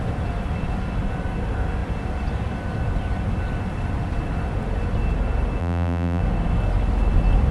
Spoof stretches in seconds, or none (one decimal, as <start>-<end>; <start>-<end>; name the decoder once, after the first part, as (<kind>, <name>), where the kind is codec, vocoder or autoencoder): 5.6-6.2 (vocoder, BigVGAN v2)